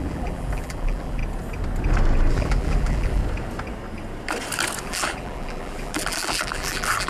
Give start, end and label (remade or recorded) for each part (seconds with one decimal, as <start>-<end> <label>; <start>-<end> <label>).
0.0-1.2 remade; 1.2-2.3 recorded; 2.3-3.2 remade; 3.2-4.8 recorded; 4.8-7.1 remade